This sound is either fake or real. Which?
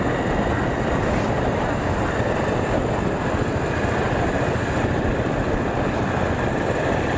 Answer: real